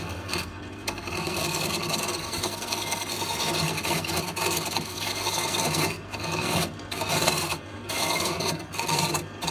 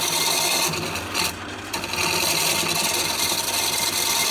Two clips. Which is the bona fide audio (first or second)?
second